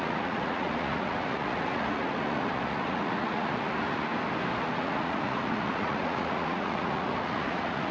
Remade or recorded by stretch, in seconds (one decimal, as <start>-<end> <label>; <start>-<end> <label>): 0.0-4.1 remade; 4.1-4.6 recorded; 4.6-7.9 remade